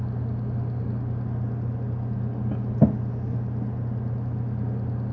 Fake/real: real